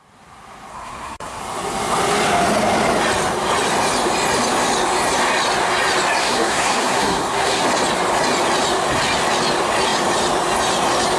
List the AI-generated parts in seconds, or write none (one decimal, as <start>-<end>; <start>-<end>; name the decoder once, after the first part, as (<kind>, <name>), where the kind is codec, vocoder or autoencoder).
0.7-1.4 (codec, SNAC); 6.2-7.6